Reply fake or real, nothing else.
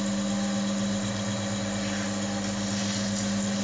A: real